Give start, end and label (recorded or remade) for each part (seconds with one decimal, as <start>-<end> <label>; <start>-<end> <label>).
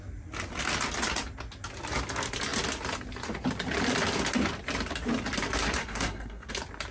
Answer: 0.0-5.8 recorded; 5.8-6.5 remade; 6.5-6.9 recorded